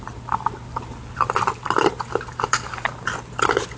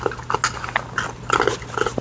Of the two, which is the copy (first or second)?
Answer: first